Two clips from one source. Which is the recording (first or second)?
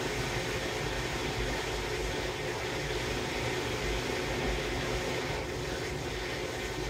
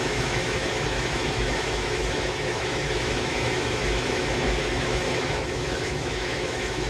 first